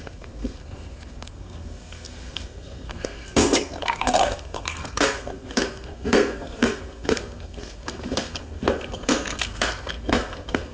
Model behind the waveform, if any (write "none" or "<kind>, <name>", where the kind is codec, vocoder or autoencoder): codec, SNAC